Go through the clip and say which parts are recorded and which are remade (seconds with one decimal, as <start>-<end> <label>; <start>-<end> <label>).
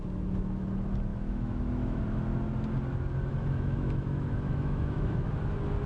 0.0-1.1 recorded; 1.1-2.0 remade; 2.0-3.3 recorded; 3.3-5.3 remade; 5.3-5.9 recorded